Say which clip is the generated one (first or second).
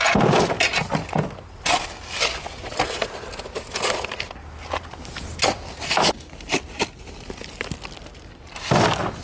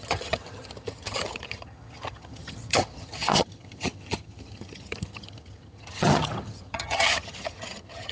second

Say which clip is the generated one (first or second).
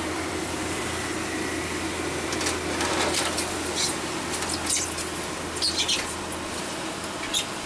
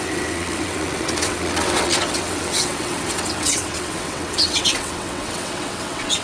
second